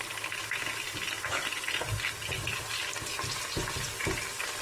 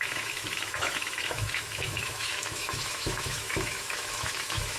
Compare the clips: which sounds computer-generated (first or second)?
second